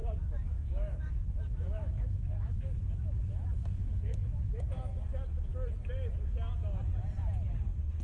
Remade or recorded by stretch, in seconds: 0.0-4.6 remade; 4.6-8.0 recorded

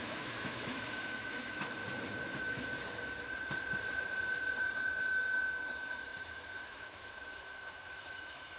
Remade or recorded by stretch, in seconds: 0.0-1.8 remade; 1.8-4.6 recorded; 4.6-8.6 remade

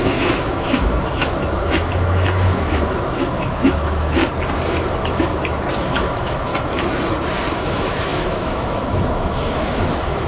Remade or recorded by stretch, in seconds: 0.0-4.2 remade; 4.2-5.0 recorded; 5.0-6.5 remade; 6.5-7.5 recorded; 7.5-10.3 remade